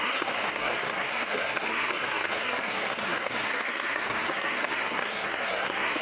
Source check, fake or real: fake